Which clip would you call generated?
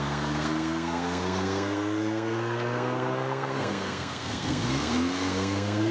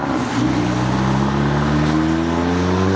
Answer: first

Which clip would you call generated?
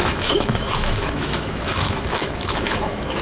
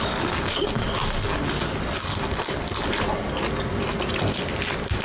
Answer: first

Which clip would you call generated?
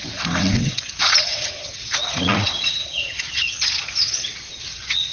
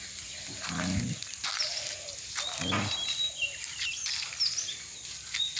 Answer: first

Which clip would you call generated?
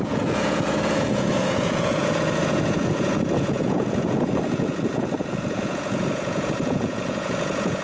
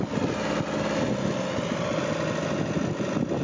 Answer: first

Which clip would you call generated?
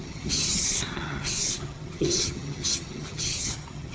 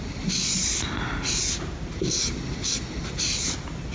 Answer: first